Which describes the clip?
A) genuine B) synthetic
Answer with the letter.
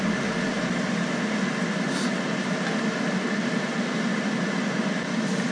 A